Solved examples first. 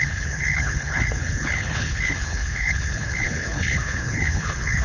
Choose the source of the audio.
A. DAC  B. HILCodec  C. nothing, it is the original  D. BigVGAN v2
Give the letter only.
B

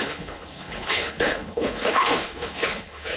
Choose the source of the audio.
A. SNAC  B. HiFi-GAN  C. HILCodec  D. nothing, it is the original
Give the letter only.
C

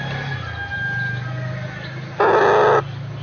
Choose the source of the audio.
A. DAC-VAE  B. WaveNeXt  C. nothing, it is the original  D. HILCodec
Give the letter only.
C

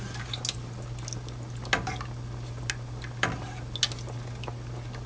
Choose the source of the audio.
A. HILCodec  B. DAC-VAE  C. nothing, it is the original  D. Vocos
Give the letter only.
C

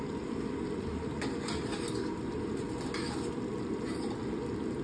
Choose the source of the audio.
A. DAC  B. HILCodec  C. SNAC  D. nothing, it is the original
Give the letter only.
D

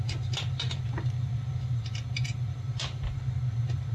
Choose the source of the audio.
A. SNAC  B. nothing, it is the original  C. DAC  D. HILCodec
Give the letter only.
B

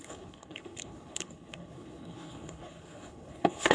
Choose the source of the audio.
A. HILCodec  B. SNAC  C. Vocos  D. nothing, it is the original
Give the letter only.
A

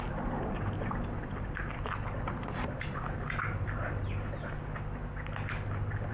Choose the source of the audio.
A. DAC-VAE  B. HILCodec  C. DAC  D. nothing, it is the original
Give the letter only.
D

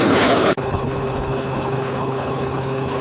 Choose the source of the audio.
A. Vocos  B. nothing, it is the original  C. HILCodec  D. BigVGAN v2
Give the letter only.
C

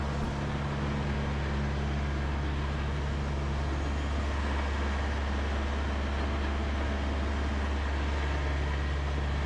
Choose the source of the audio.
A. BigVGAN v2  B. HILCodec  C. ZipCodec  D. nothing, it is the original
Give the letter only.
D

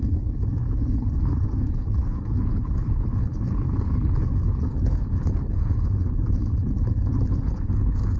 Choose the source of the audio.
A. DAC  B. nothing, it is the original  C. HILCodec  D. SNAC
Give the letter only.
C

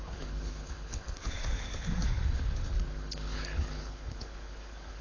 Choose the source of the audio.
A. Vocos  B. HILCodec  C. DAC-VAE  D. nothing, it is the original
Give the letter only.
B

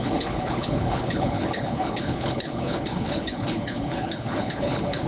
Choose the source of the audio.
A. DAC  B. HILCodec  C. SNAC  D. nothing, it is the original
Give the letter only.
B